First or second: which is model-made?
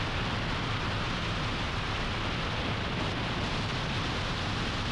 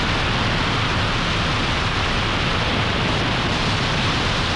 first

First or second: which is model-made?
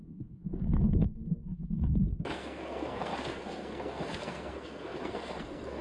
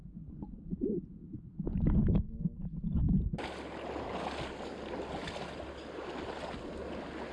first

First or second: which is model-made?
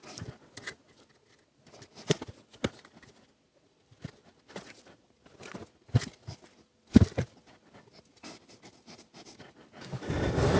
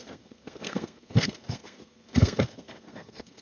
second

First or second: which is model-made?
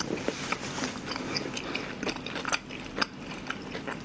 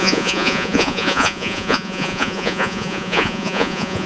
second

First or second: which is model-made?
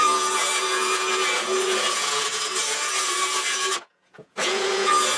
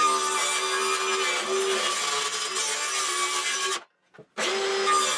first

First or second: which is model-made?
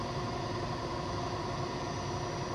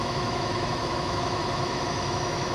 second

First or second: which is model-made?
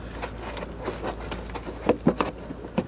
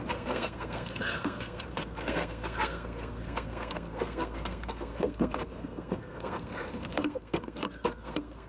second